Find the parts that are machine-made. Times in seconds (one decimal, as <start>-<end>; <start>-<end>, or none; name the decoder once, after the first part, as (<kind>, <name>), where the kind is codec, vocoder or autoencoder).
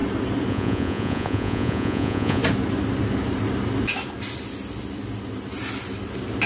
0.5-2.4 (vocoder, Vocos)